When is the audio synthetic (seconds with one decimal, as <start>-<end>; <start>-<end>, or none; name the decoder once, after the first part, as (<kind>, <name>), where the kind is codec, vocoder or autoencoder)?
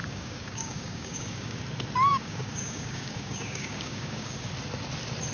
0.0-1.6 (codec, DAC); 2.1-4.5